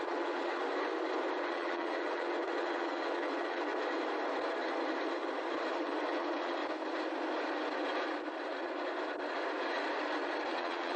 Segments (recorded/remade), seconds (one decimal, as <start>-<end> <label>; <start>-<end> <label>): 0.0-0.6 remade; 0.6-1.4 recorded; 1.4-3.7 remade; 3.7-5.7 recorded; 5.7-6.6 remade; 6.6-10.5 recorded; 10.5-11.0 remade